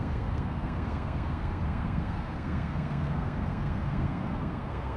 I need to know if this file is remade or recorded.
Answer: remade